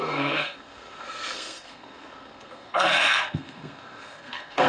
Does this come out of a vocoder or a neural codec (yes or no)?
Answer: yes